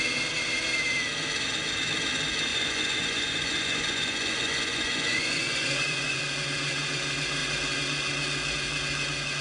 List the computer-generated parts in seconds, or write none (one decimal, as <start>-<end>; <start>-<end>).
2.5-6.2